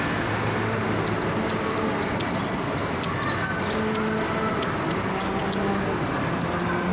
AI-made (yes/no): no